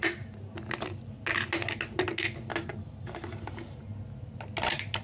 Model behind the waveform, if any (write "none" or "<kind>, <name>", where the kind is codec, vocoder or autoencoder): none